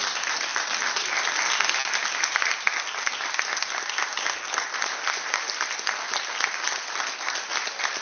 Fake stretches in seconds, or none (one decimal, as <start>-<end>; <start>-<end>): none